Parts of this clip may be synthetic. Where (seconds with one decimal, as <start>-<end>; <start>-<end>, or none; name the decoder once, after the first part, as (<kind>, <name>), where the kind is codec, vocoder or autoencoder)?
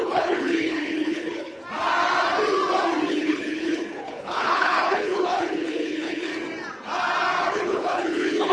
0.0-1.6 (codec, HILCodec); 3.1-6.3; 7.5-8.5